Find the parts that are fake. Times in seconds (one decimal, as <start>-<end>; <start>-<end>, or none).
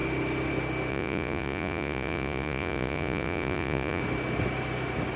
0.9-4.0